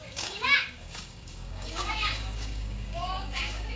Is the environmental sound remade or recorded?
remade